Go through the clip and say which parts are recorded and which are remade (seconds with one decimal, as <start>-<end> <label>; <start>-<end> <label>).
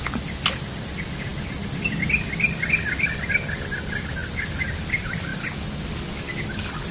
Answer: 0.0-6.9 recorded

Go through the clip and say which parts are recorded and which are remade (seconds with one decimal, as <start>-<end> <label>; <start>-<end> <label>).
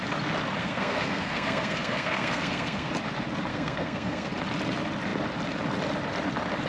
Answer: 0.0-0.6 recorded; 0.6-2.9 remade; 2.9-3.5 recorded; 3.5-4.3 remade; 4.3-6.7 recorded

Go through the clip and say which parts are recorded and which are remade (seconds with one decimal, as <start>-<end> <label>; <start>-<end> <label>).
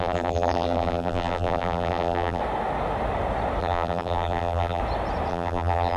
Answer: 0.0-2.4 remade; 2.4-3.6 recorded; 3.6-4.8 remade; 4.8-5.3 recorded; 5.3-6.0 remade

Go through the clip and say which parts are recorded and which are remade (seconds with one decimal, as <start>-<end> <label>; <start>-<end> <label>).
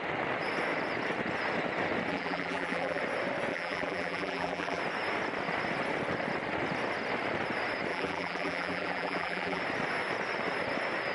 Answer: 0.0-2.1 recorded; 2.1-3.0 remade; 3.0-3.5 recorded; 3.5-4.8 remade; 4.8-7.9 recorded; 7.9-9.6 remade; 9.6-11.1 recorded